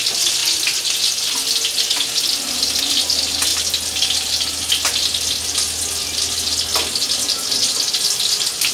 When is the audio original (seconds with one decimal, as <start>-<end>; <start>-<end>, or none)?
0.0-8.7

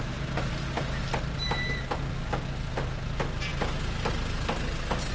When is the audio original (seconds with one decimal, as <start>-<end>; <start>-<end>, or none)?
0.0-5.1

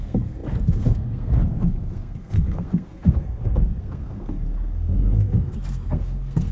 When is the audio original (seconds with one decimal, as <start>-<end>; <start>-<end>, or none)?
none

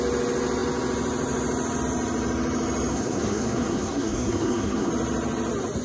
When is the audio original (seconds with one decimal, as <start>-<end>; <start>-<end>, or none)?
0.0-2.9; 4.9-5.8

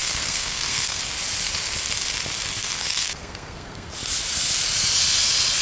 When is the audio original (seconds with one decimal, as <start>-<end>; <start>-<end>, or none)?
1.0-2.6; 3.9-5.6

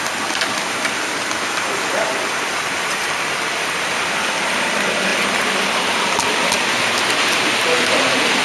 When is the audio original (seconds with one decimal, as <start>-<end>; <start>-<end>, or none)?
0.0-8.4

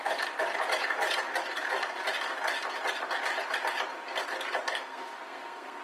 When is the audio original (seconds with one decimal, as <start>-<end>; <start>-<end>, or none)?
0.0-4.7